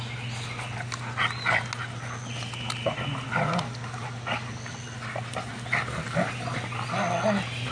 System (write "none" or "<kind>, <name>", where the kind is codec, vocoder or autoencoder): none